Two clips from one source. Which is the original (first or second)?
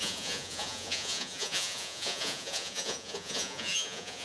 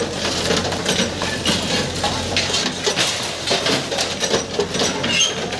second